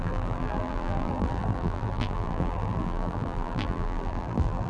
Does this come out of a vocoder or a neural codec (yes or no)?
yes